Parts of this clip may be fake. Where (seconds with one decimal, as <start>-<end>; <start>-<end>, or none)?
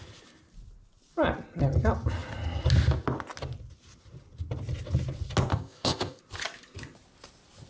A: 5.5-6.2